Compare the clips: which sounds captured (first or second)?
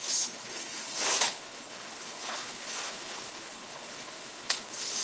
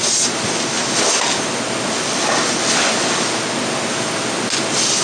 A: second